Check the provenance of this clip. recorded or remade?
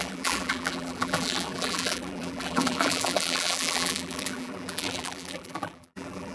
remade